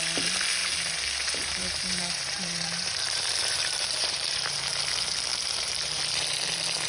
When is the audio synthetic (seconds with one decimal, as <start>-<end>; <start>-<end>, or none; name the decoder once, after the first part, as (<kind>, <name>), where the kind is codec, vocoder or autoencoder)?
0.6-4.7 (vocoder, BigVGAN v2); 5.3-6.0